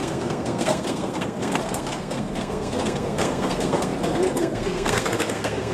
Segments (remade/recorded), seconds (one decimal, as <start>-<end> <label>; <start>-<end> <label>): 0.0-5.7 remade